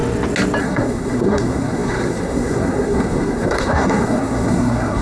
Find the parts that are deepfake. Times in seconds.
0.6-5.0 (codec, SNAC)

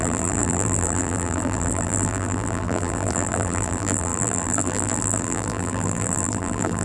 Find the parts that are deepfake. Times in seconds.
0.0-6.8 (vocoder, BigVGAN v2)

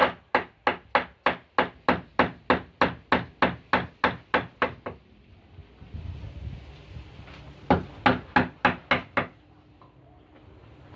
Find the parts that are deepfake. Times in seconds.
none

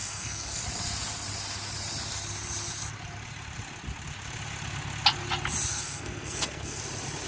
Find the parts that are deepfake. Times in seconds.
0.0-0.6 (codec, SNAC); 5.7-6.8

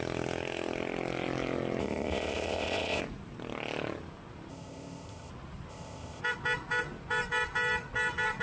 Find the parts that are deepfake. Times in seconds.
1.8-3.0 (codec, ZipCodec); 4.5-5.3; 5.7-6.2

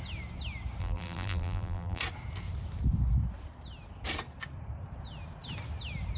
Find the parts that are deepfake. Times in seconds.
0.8-2.0 (vocoder, BigVGAN v2)

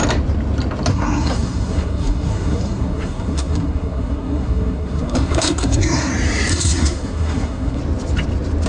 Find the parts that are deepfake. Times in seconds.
0.9-6.1 (codec, SNAC); 6.5-7.8